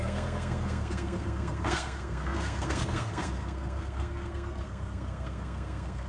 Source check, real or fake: fake